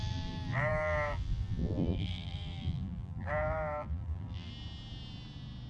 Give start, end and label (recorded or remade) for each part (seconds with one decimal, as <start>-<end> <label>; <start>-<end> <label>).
0.0-4.5 remade; 4.5-5.7 recorded